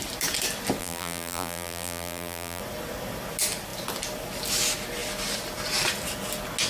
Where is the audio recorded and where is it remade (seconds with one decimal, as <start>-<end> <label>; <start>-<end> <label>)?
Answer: 0.0-0.8 recorded; 0.8-2.6 remade; 2.6-6.7 recorded